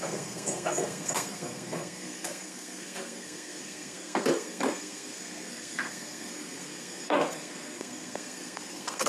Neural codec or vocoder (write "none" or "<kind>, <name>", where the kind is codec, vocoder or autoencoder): codec, SNAC